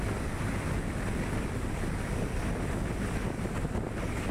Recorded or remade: recorded